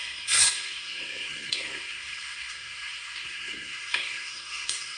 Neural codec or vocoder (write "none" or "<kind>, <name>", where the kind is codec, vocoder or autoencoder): codec, SNAC